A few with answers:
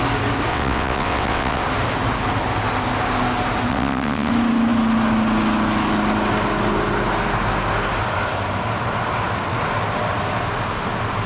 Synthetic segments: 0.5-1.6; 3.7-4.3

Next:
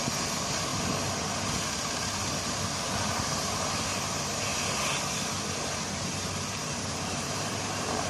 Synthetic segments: 0.0-0.7; 3.2-4.5; 5.6-8.1

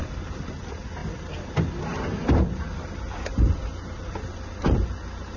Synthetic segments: none

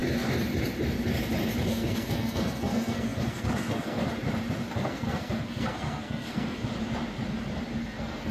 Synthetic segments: 1.7-4.0; 4.7-6.7; 7.8-8.3

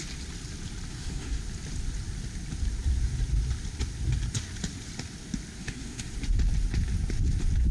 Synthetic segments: 0.9-1.4; 5.6-6.1

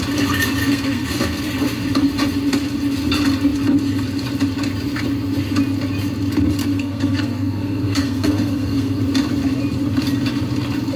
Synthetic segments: 0.6-1.4; 6.6-9.0

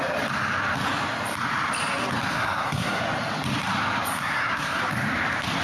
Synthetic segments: 2.3-3.0; 4.1-4.8